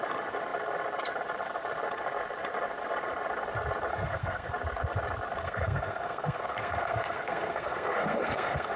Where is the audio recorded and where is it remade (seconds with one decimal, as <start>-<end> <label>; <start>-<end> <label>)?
0.0-3.9 recorded; 3.9-4.5 remade; 4.5-5.4 recorded; 5.4-8.8 remade